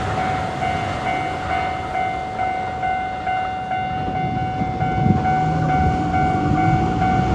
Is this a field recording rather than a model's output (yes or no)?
yes